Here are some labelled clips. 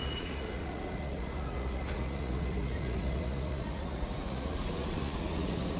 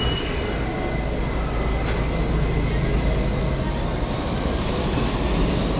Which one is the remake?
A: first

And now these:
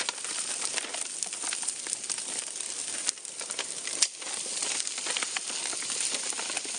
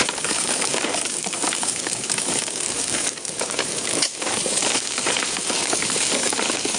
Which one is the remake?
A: second